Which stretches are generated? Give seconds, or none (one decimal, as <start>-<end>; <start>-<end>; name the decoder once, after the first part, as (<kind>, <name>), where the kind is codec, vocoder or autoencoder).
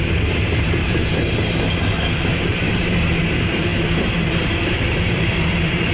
0.0-1.0 (vocoder, BigVGAN v2); 2.3-5.9